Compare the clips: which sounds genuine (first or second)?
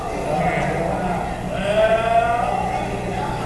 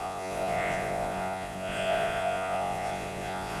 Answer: first